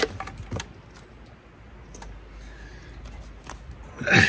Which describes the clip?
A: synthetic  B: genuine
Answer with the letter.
B